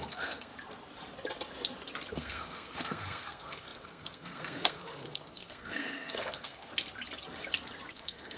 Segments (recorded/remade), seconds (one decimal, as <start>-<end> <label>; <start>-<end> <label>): 0.0-0.5 remade; 0.5-2.1 recorded; 2.1-6.7 remade; 6.7-7.9 recorded; 7.9-8.4 remade